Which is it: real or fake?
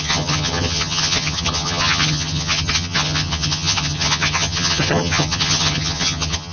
fake